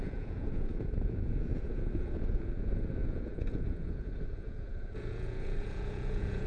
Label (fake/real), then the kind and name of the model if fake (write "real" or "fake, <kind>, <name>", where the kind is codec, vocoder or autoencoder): fake, vocoder, Vocos